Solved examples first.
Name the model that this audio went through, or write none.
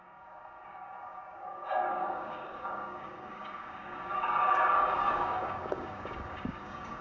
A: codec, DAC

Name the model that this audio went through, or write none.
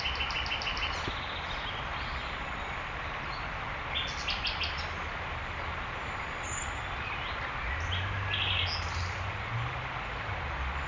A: none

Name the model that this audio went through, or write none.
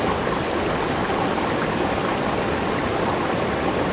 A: none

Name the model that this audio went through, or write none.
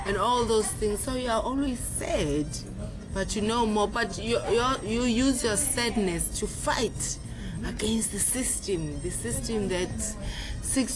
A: none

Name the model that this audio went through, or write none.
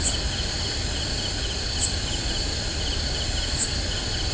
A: none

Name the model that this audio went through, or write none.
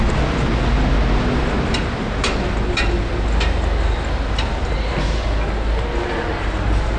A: none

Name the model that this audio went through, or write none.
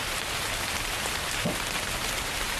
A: vocoder, BigVGAN v2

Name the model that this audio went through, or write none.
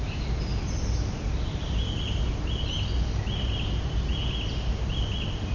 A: none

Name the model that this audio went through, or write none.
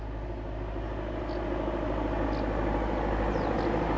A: none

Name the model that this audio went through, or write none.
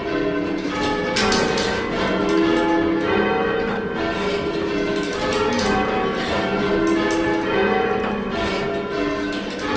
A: none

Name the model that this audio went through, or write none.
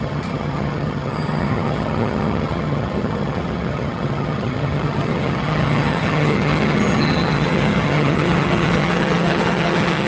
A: vocoder, HiFi-GAN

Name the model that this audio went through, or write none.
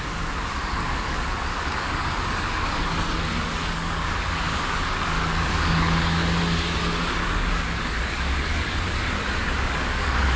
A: codec, DAC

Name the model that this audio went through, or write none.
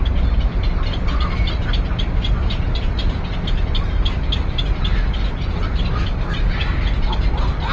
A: none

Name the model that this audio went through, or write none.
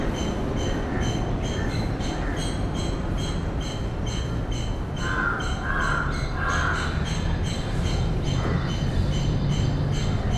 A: none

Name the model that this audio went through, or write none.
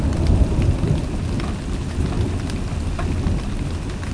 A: none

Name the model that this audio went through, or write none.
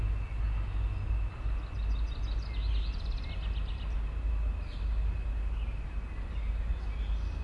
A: none